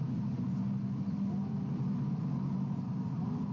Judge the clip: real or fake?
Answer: real